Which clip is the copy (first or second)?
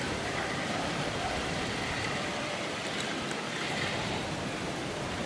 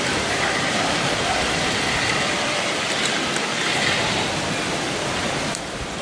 first